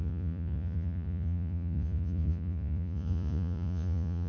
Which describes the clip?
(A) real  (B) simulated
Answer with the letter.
B